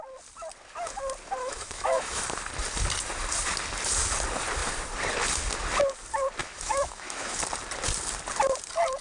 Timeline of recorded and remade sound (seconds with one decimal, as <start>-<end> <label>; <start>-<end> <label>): 0.0-1.4 recorded; 1.4-2.2 remade; 2.2-6.4 recorded; 6.4-7.4 remade; 7.4-9.0 recorded